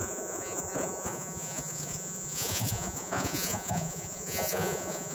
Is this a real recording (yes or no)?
no